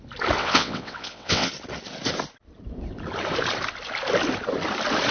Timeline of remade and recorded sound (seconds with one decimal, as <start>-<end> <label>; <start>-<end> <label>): 0.0-0.4 recorded; 0.4-1.5 remade; 1.5-5.1 recorded